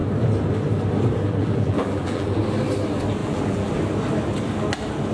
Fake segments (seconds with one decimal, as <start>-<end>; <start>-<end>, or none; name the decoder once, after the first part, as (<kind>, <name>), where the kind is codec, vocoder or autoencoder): 1.4-2.4 (vocoder, BigVGAN v2); 3.2-3.7